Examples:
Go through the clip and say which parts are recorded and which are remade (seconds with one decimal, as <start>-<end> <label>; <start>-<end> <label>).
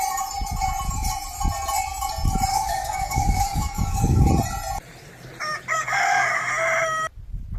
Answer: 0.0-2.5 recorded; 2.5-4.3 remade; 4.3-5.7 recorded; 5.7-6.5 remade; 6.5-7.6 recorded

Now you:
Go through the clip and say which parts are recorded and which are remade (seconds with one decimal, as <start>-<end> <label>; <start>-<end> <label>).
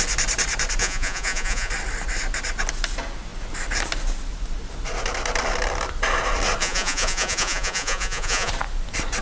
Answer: 0.0-0.8 recorded; 0.8-1.7 remade; 1.7-6.6 recorded; 6.6-8.5 remade; 8.5-9.2 recorded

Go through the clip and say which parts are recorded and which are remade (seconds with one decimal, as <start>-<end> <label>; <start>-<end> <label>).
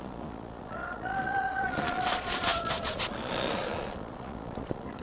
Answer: 0.0-5.0 remade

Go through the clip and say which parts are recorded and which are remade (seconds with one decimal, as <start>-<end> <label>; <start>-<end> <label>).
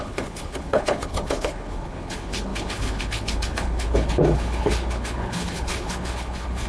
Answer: 0.0-6.7 remade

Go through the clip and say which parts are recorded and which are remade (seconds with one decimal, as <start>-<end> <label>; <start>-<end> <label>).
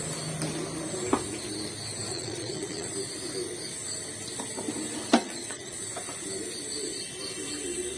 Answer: 0.0-2.1 recorded; 2.1-2.9 remade; 2.9-5.2 recorded; 5.2-5.8 remade; 5.8-8.0 recorded